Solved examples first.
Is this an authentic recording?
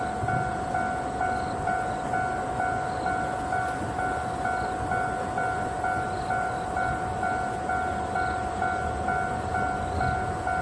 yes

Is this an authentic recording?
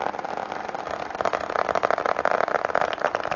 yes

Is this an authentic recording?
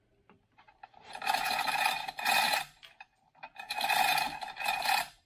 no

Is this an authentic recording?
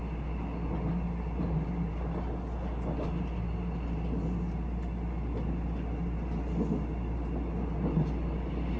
yes